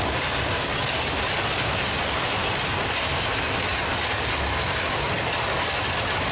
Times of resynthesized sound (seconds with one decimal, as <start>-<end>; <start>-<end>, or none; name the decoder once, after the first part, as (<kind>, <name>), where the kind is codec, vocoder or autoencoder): none